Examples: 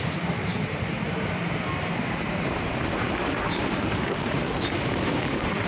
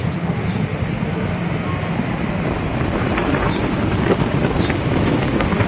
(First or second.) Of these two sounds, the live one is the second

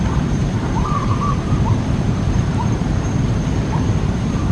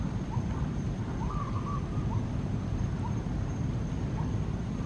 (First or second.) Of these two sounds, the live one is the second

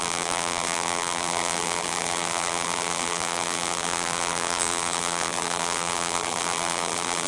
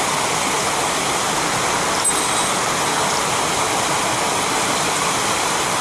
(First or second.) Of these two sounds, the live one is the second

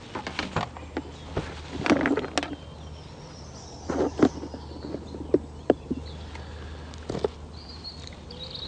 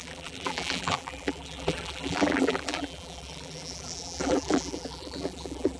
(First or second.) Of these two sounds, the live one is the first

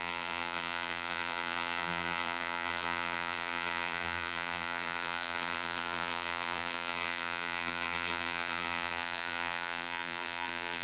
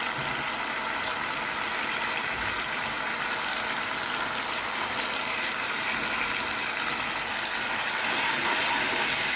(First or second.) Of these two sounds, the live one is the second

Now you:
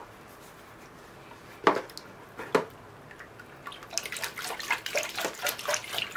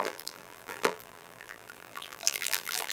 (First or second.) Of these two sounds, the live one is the first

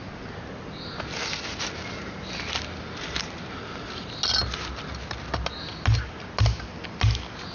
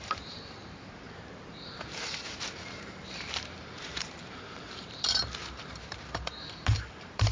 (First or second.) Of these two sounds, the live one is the first